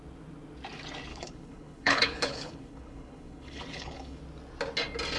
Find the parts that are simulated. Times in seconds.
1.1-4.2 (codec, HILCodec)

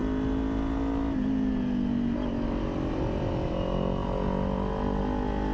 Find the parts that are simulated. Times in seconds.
none